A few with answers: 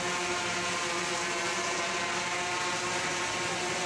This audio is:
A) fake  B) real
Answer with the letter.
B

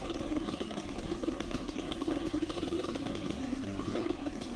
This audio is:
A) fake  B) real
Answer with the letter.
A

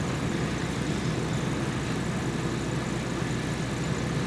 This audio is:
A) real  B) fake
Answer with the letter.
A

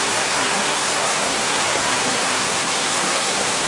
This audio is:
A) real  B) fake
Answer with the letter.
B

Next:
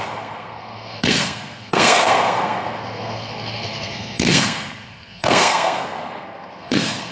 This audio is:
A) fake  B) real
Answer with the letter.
A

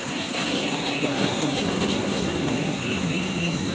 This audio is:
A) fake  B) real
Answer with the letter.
A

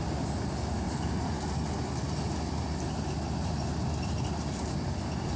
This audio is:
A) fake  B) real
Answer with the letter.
B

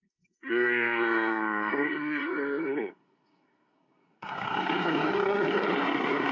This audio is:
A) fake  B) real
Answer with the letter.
A